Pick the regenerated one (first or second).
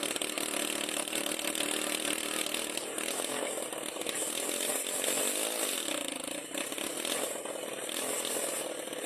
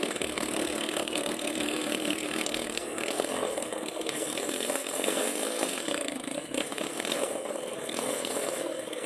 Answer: second